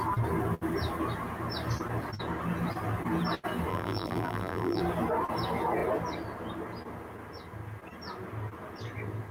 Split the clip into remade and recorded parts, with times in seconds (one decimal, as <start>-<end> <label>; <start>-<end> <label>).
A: 0.0-3.7 recorded; 3.7-4.8 remade; 4.8-9.3 recorded